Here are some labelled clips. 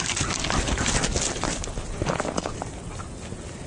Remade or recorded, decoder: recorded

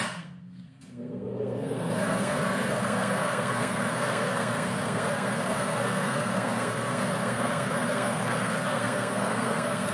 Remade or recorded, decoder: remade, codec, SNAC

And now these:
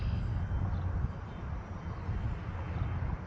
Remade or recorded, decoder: recorded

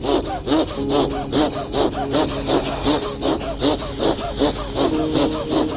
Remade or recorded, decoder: recorded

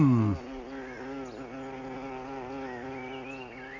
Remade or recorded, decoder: recorded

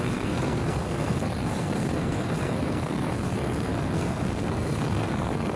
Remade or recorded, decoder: remade, codec, SNAC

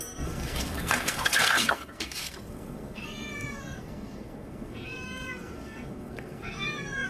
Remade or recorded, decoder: remade, codec, SNAC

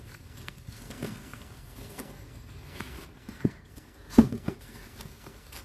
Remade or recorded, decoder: remade, codec, SNAC